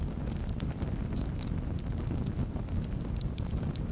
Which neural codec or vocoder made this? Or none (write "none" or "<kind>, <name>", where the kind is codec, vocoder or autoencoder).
none